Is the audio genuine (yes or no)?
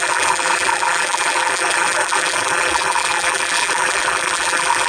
no